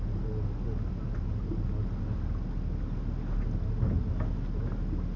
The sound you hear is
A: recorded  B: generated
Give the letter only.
A